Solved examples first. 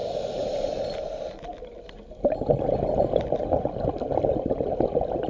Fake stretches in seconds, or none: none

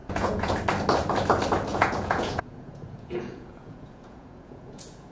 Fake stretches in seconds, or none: 0.0-0.5; 1.7-5.1

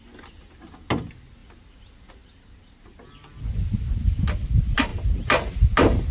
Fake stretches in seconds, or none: none

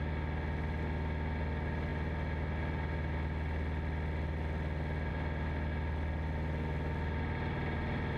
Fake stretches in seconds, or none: none